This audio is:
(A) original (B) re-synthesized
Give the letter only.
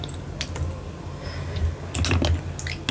A